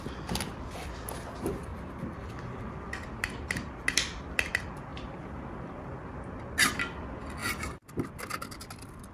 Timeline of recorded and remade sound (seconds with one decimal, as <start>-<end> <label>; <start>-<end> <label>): 0.0-9.1 recorded